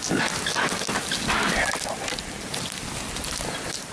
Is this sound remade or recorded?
recorded